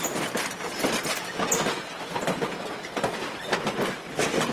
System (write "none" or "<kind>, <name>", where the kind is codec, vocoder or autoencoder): none